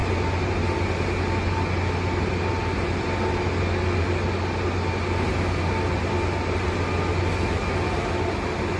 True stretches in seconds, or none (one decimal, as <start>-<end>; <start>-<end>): 0.0-8.8